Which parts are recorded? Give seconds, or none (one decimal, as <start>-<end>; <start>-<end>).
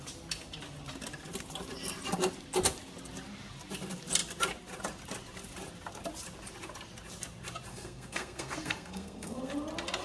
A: 0.0-7.7; 9.5-10.0